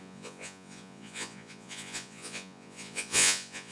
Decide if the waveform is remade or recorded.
remade